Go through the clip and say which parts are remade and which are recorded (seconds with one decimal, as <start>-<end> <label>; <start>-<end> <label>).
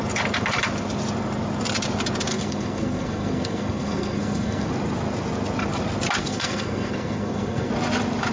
0.0-2.3 recorded; 2.3-4.7 remade; 4.7-6.2 recorded; 6.2-7.7 remade; 7.7-8.3 recorded